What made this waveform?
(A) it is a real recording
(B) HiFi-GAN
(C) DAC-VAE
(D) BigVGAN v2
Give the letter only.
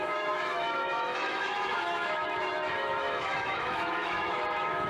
C